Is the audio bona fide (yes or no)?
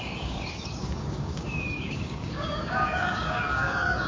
no